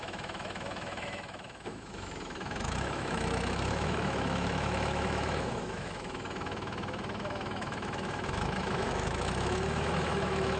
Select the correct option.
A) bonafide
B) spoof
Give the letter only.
B